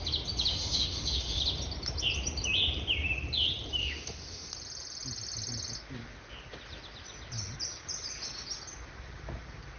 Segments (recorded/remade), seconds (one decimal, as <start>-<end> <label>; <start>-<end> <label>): 0.0-0.5 recorded; 0.5-1.4 remade; 1.4-3.8 recorded; 3.8-4.5 remade; 4.5-9.8 recorded